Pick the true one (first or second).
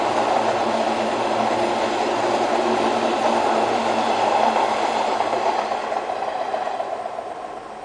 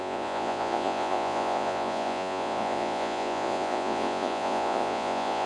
first